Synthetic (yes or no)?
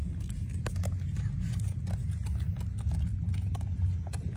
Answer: no